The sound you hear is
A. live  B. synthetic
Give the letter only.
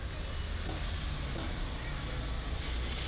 A